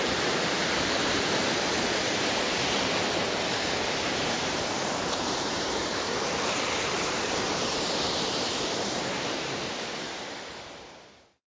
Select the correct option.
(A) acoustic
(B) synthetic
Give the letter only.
B